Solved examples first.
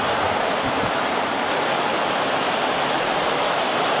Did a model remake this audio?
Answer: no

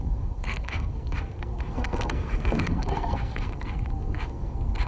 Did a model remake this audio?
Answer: yes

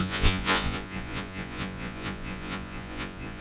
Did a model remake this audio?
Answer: yes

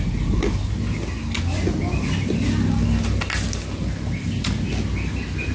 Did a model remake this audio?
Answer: no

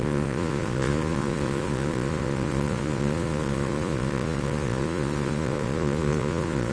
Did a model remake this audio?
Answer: yes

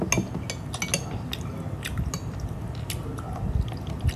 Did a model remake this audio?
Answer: no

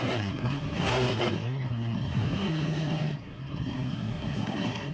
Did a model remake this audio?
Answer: yes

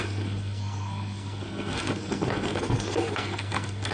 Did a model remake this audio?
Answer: yes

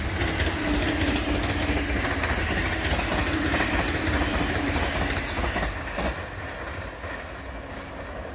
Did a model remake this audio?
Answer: no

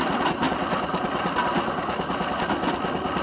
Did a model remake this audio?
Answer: no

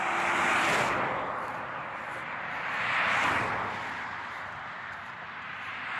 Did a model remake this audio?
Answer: no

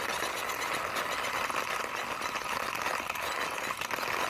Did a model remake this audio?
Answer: no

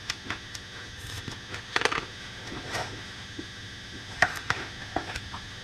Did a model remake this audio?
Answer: yes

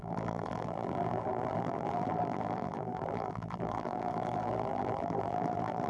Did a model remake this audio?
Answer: yes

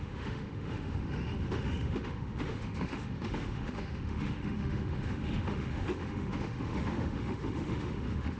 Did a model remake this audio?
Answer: yes